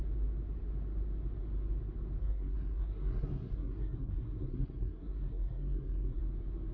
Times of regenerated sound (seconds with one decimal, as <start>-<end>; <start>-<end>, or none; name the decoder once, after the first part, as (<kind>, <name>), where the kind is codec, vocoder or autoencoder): 2.2-6.2 (codec, SNAC)

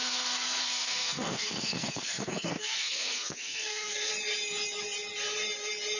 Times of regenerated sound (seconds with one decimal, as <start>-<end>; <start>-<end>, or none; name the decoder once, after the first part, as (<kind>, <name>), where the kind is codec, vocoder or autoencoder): 0.0-4.1 (codec, SNAC)

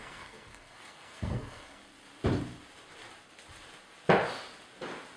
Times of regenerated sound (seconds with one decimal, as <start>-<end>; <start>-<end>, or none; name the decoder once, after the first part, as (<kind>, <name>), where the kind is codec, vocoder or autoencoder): 0.0-1.8 (codec, SNAC)